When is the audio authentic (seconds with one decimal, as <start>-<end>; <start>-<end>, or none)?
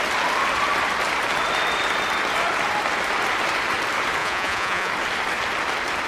0.0-4.2; 4.9-6.1